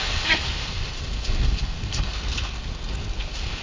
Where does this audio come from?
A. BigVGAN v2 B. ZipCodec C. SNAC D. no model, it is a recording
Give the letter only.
C